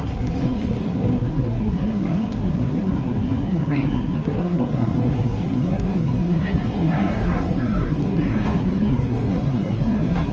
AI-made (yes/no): yes